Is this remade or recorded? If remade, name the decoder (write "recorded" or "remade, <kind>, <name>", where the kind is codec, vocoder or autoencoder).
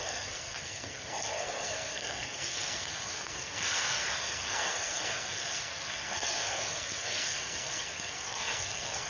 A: remade, codec, SNAC